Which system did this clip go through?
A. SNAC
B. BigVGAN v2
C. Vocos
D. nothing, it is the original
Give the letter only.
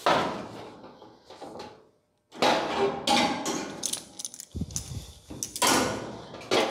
D